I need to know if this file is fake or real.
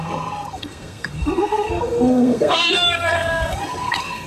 fake